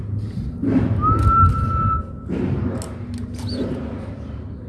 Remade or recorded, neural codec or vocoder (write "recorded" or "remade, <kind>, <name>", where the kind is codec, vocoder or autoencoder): recorded